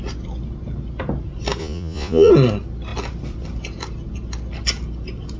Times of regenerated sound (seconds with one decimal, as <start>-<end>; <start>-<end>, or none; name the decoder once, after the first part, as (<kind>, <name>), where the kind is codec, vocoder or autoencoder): 1.6-2.3 (vocoder, Vocos)